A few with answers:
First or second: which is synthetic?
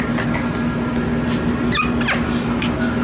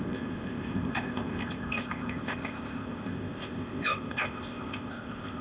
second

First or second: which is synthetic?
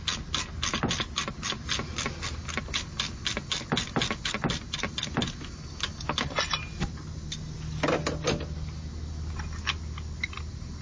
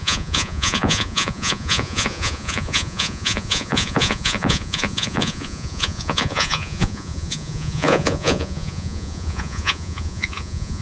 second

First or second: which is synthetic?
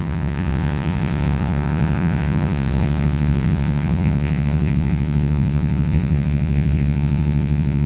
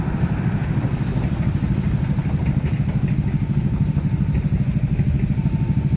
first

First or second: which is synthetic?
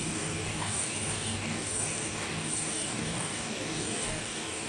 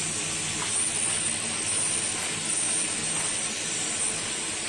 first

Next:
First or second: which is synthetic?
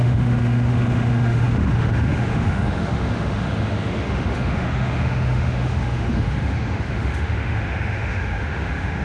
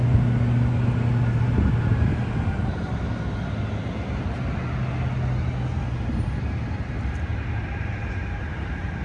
first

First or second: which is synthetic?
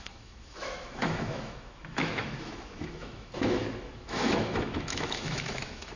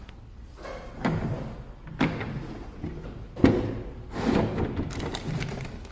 first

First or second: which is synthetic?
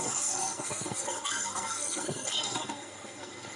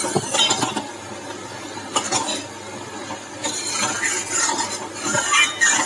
first